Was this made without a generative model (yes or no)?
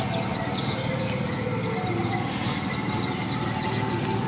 yes